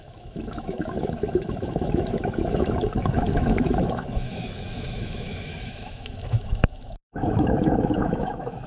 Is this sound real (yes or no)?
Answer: no